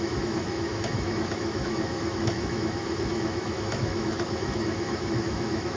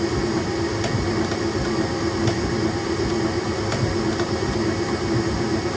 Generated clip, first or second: first